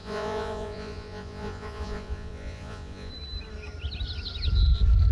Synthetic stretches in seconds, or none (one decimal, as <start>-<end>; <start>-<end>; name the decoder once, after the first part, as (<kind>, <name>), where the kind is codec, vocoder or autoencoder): 0.0-3.1 (vocoder, Vocos)